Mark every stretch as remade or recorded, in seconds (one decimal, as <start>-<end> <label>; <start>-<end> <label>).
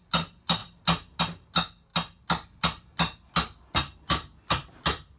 0.0-5.2 recorded